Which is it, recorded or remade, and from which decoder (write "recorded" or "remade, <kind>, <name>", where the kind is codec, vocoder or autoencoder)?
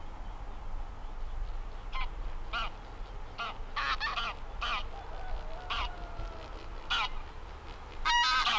recorded